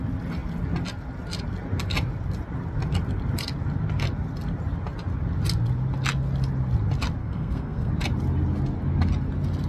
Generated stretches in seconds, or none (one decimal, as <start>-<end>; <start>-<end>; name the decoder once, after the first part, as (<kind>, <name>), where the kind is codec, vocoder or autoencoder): 7.2-7.9 (codec, SNAC)